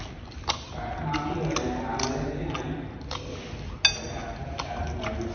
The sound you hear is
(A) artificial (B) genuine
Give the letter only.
B